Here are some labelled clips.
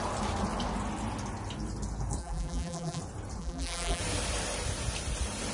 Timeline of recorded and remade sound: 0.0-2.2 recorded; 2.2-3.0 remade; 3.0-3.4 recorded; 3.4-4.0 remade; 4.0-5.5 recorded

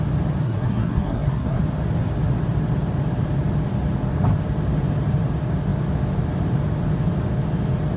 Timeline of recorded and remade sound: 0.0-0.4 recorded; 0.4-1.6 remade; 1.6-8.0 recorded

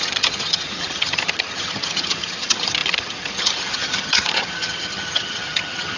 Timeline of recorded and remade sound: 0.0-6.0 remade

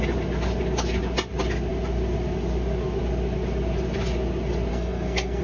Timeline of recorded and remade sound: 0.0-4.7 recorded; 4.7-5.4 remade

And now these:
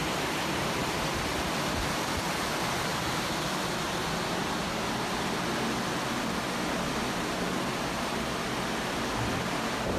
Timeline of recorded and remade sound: 0.0-10.0 recorded